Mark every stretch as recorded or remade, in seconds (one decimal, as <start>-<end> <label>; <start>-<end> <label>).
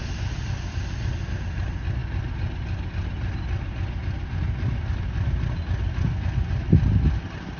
0.0-7.6 recorded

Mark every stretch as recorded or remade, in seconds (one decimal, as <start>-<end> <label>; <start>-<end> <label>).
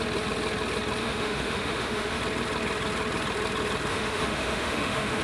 0.0-1.0 recorded; 1.0-2.2 remade; 2.2-3.9 recorded; 3.9-5.2 remade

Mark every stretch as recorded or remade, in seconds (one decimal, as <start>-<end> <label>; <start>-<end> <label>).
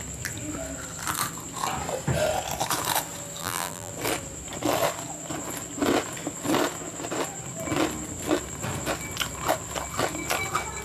0.0-3.4 recorded; 3.4-3.9 remade; 3.9-10.8 recorded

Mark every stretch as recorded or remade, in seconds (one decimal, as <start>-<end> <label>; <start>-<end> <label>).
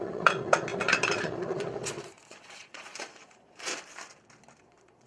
0.0-3.7 remade; 3.7-4.6 recorded; 4.6-5.1 remade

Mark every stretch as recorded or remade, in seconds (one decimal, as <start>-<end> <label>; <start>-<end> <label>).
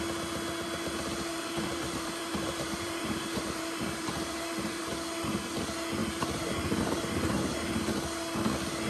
0.0-1.3 recorded; 1.3-5.3 remade; 5.3-6.0 recorded; 6.0-7.8 remade; 7.8-8.9 recorded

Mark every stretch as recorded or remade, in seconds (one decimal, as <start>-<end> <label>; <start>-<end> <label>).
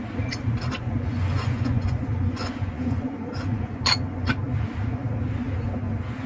0.0-0.8 recorded; 0.8-4.3 remade; 4.3-6.3 recorded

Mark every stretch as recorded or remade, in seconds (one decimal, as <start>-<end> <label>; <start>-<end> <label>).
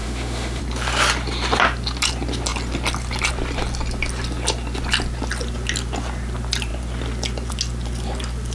0.0-0.6 remade; 0.6-8.5 recorded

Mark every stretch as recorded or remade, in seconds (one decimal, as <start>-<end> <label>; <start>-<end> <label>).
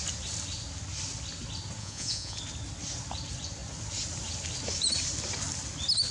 0.0-1.8 recorded; 1.8-2.4 remade; 2.4-6.1 recorded